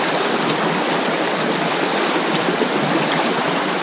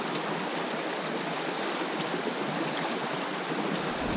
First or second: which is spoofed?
first